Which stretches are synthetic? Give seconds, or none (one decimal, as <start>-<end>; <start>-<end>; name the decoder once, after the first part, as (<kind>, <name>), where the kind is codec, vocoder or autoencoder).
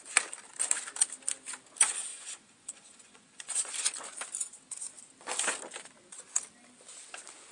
2.1-3.7 (vocoder, Vocos)